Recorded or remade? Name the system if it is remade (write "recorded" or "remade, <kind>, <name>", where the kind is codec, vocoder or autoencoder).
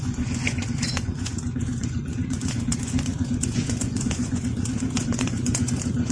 remade, vocoder, Vocos